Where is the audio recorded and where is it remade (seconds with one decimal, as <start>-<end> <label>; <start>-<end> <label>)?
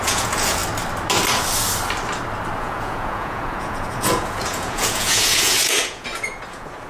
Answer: 0.0-0.6 remade; 0.6-2.6 recorded; 2.6-6.9 remade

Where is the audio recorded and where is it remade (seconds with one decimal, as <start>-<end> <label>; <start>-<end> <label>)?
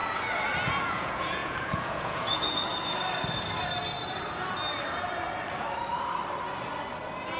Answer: 0.0-0.7 recorded; 0.7-2.7 remade; 2.7-7.4 recorded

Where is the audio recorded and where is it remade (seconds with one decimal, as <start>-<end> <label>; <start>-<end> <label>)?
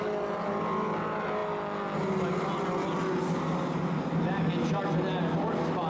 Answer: 0.0-5.9 recorded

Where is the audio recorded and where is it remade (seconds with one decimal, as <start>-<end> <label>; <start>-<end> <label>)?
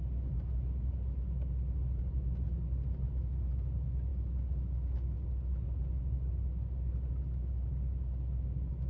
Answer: 0.0-8.9 recorded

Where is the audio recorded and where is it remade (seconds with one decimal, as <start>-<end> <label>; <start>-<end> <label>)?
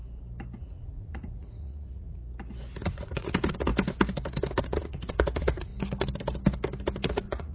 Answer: 0.0-0.6 recorded; 0.6-2.2 remade; 2.2-2.8 recorded; 2.8-3.7 remade; 3.7-4.6 recorded; 4.6-5.7 remade; 5.7-7.1 recorded; 7.1-7.5 remade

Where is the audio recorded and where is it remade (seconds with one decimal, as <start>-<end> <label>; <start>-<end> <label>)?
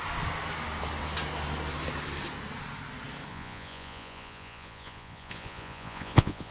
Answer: 0.0-3.3 recorded; 3.3-6.5 remade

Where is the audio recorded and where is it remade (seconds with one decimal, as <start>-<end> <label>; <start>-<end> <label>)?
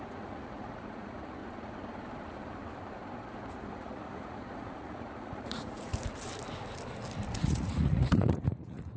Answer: 0.0-1.4 remade; 1.4-3.7 recorded; 3.7-5.9 remade; 5.9-7.4 recorded; 7.4-9.0 remade